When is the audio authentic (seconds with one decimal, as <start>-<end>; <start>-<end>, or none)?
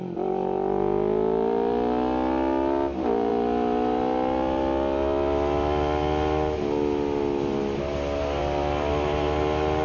0.0-9.8